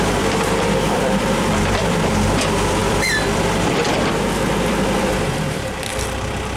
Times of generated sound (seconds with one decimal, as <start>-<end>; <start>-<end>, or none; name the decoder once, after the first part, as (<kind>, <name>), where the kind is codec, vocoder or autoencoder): 0.0-5.9 (vocoder, BigVGAN v2)